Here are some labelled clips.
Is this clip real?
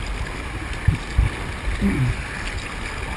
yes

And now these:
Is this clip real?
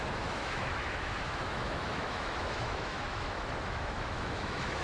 no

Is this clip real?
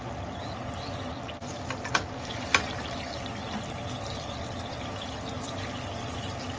yes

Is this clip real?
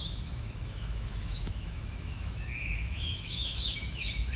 no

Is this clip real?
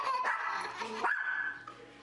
yes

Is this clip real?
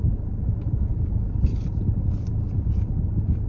no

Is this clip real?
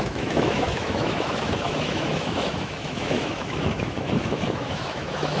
no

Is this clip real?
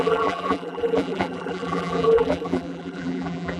no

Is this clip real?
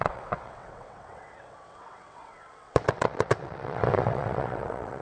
no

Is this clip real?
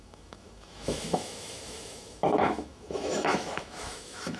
no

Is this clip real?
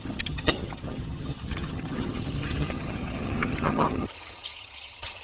no